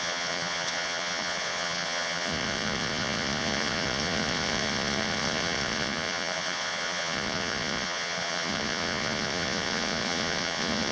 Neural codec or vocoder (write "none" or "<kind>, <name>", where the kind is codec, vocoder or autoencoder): vocoder, Vocos